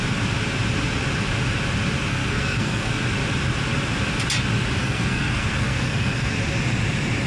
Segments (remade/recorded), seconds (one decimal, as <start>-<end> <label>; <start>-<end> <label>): 0.0-2.1 recorded; 2.1-2.9 remade; 2.9-4.8 recorded; 4.8-6.3 remade; 6.3-7.3 recorded